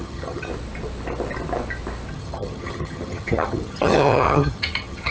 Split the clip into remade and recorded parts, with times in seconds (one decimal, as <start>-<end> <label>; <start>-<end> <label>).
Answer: 0.0-0.5 remade; 0.5-2.1 recorded; 2.1-5.1 remade